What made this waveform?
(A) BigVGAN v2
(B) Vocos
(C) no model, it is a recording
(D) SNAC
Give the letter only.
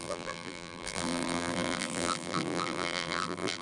A